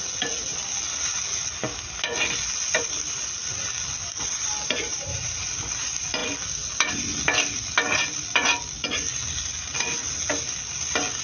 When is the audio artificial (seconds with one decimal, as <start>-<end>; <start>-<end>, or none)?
4.9-5.4